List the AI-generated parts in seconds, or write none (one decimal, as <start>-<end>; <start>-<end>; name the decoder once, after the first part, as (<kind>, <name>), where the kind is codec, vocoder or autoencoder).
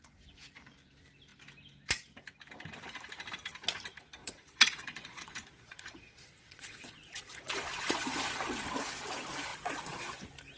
4.2-8.3 (vocoder, Vocos); 9.5-10.2